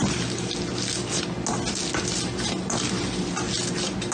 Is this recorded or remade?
recorded